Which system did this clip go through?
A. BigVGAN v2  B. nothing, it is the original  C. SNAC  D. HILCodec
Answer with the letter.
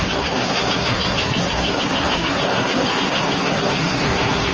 C